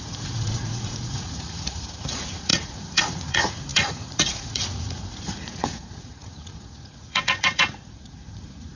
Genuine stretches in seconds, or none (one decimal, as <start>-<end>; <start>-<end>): none